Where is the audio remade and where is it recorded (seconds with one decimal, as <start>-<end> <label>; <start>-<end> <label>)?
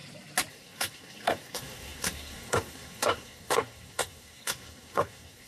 0.0-0.5 recorded; 0.5-5.5 remade